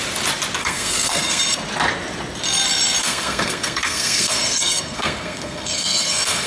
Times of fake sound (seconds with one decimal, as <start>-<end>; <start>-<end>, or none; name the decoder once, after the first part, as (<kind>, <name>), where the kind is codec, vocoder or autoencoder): 0.6-1.4 (codec, SNAC); 3.0-6.5